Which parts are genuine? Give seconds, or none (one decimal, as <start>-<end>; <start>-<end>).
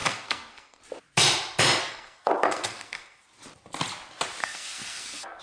0.8-1.8; 3.2-4.4